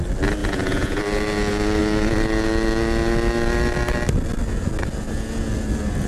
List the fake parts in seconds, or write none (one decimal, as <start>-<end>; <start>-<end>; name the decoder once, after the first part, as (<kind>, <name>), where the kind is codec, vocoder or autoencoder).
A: 0.4-1.0 (vocoder, Vocos)